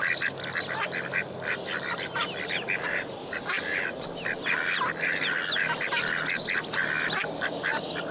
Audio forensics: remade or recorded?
recorded